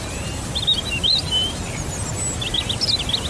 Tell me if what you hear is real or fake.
real